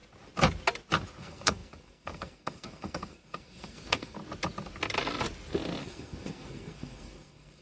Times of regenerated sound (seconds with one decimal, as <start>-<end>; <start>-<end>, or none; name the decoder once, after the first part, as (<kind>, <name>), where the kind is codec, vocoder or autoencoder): 1.2-4.2 (codec, SNAC); 5.8-7.6